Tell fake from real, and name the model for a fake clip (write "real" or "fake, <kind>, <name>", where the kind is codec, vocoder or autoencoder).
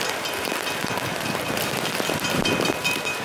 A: fake, vocoder, BigVGAN v2